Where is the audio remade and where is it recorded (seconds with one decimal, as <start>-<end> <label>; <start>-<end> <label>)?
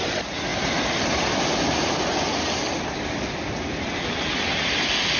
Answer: 0.0-5.2 recorded